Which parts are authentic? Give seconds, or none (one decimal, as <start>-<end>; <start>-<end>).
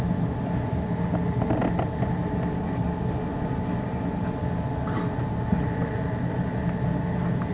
0.0-7.5